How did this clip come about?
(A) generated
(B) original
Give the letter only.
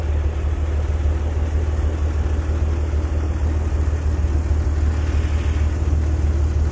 B